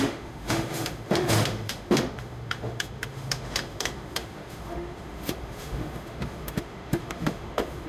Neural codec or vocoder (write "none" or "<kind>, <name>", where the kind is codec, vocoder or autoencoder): autoencoder, DAC-VAE